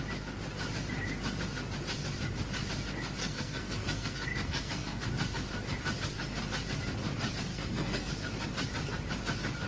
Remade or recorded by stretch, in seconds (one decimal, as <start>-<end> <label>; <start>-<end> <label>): 0.0-3.2 recorded; 3.2-5.0 remade; 5.0-7.5 recorded; 7.5-8.1 remade; 8.1-9.7 recorded